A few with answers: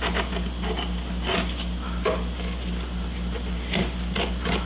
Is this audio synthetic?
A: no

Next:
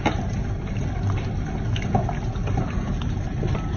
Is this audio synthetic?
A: no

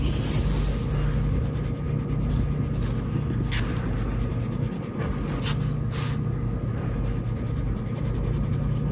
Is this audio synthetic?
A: no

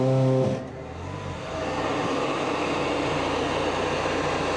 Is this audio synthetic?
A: no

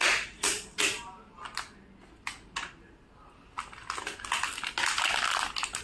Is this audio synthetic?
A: no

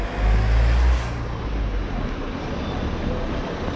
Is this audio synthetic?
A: no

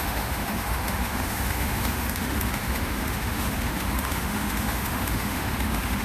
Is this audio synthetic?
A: yes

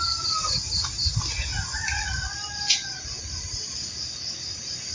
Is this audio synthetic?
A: no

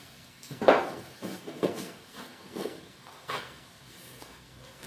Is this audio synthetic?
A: yes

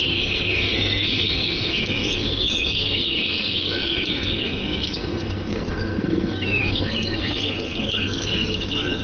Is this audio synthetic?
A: yes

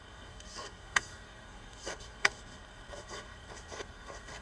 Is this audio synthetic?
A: yes